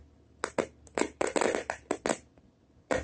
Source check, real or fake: real